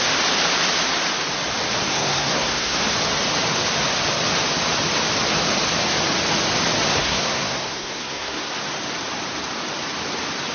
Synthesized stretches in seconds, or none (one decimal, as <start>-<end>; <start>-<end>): 1.9-2.8; 6.9-8.5

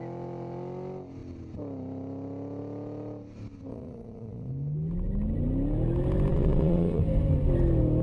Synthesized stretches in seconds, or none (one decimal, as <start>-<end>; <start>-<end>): 3.7-4.5; 6.3-7.0

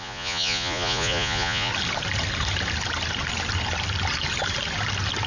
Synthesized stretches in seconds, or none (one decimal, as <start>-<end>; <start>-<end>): 0.0-1.7

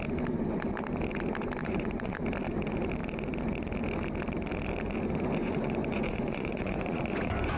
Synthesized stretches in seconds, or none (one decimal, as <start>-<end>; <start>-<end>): 1.6-2.2; 5.4-7.6

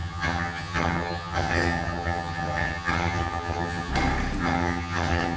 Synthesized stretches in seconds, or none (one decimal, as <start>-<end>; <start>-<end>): 0.0-3.9; 4.4-5.4